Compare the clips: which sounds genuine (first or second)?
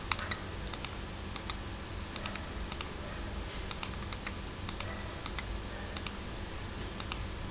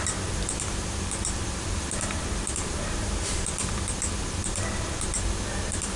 first